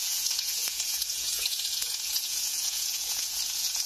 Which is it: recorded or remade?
remade